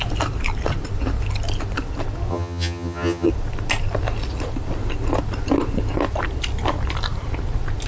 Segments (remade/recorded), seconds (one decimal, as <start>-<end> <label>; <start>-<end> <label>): 0.0-2.3 recorded; 2.3-3.3 remade; 3.3-7.9 recorded